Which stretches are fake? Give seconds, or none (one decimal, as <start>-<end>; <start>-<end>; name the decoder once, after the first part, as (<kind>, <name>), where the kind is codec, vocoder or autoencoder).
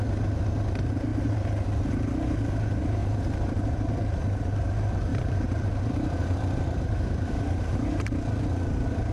3.0-3.9 (vocoder, BigVGAN v2); 5.1-8.4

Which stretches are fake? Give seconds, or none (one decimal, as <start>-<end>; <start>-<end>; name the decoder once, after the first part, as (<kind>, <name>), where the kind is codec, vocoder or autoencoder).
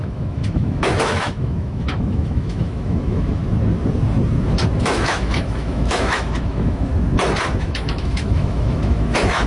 0.0-3.4 (autoencoder, DAC-VAE); 4.8-6.9; 7.6-9.5